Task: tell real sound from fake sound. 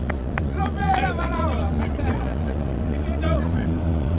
fake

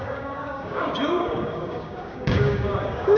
fake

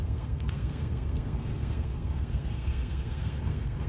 fake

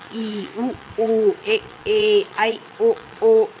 fake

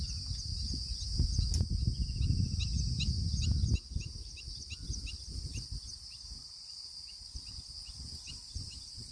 real